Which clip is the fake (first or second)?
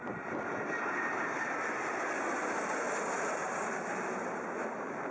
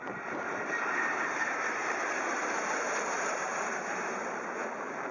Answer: second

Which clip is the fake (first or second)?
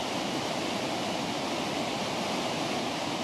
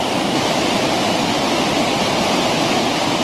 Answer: second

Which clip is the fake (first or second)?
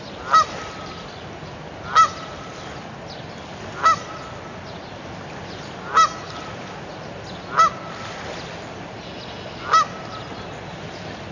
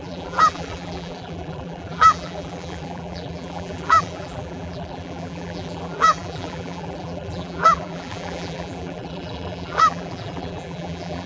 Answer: second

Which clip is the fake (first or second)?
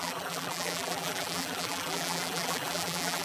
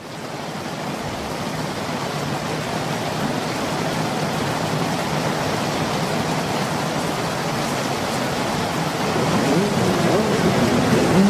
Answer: first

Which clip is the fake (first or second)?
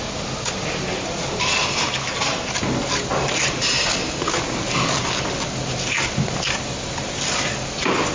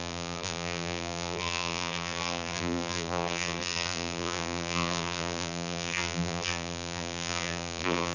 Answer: second